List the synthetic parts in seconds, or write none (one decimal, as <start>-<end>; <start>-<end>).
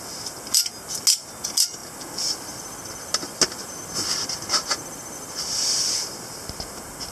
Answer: none